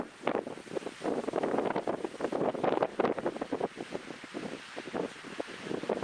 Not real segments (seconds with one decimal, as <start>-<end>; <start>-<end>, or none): 4.4-5.5